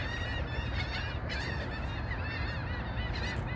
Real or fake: real